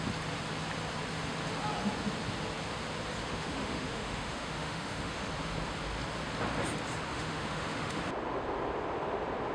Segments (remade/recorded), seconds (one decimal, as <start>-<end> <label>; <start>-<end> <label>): 0.0-3.2 recorded; 3.2-5.3 remade; 5.3-7.1 recorded; 7.1-8.0 remade; 8.0-9.5 recorded